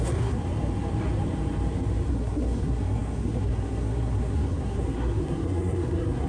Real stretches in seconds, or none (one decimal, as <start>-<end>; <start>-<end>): 0.4-2.1